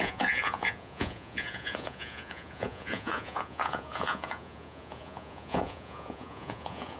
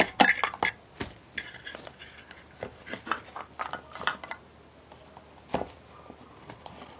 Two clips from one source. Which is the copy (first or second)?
first